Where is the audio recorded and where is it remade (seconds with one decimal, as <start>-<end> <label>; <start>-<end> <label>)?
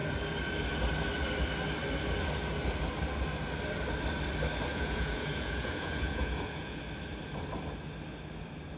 0.0-4.7 recorded; 4.7-6.8 remade; 6.8-8.8 recorded